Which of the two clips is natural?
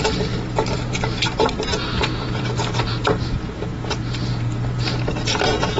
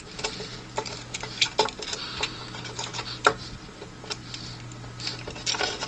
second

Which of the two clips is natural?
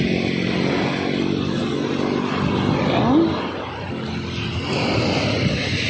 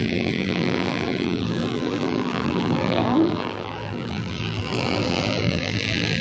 first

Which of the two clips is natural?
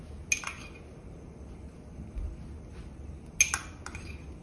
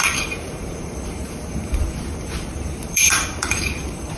first